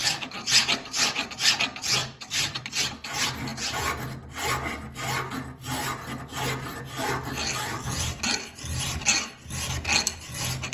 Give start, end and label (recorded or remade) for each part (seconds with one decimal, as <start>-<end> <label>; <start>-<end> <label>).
0.0-1.5 remade; 1.5-2.0 recorded; 2.0-2.6 remade; 2.6-10.7 recorded